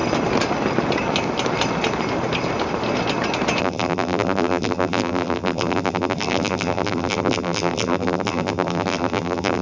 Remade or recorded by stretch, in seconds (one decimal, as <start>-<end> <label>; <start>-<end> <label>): 0.0-3.6 recorded; 3.6-9.6 remade